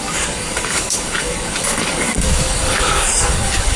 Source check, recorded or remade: remade